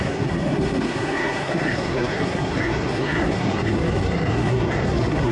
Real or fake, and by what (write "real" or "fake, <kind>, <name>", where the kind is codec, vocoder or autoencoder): fake, codec, SNAC